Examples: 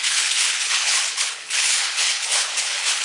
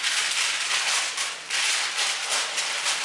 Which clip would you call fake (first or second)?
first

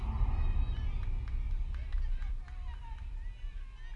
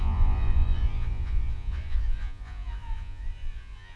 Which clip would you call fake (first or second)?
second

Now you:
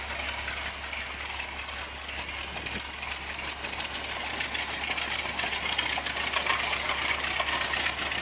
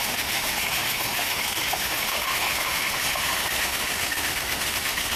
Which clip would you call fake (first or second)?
second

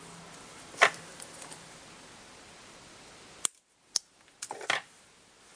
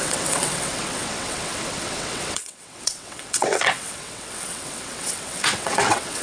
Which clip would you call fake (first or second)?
second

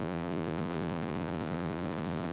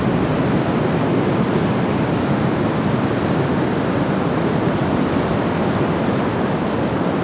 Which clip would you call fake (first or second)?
first